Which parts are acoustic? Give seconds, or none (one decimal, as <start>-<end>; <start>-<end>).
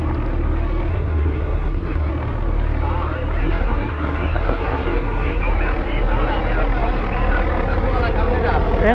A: 0.0-0.9; 2.1-3.4; 5.4-8.9